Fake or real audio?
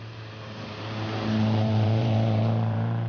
fake